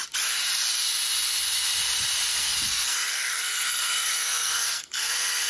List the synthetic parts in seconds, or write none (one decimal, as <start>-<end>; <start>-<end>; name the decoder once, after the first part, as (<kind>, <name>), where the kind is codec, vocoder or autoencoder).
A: 2.3-5.5 (codec, SNAC)